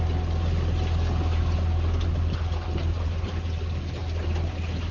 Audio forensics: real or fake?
real